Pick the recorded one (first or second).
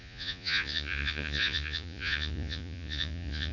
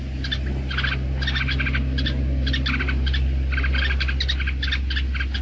second